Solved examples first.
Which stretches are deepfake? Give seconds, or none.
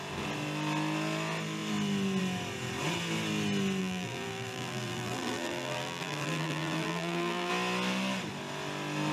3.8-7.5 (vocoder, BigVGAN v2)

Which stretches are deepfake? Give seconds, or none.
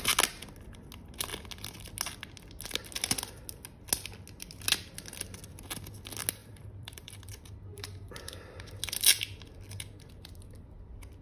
6.4-7.1 (vocoder, BigVGAN v2); 7.7-8.8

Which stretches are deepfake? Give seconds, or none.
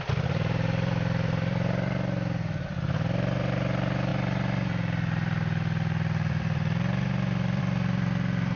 0.0-8.6 (vocoder, BigVGAN v2)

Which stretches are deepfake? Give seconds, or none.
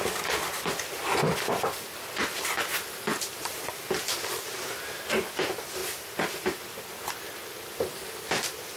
5.8-6.9 (vocoder, BigVGAN v2)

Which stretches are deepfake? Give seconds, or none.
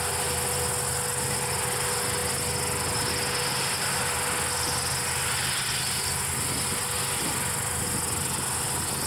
none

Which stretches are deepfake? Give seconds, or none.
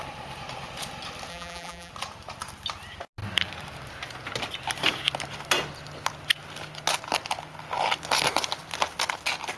1.3-1.9 (vocoder, BigVGAN v2)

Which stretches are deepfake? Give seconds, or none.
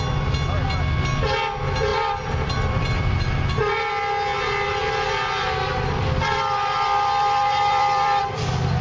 1.9-3.9 (vocoder, BigVGAN v2); 4.7-8.4